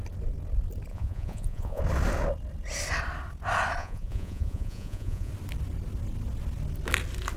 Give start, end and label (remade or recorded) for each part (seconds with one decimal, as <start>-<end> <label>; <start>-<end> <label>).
0.0-0.9 recorded; 0.9-1.8 remade; 1.8-3.8 recorded; 3.8-5.3 remade; 5.3-7.4 recorded